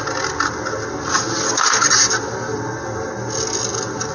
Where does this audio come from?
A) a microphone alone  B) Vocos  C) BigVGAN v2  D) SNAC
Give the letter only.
A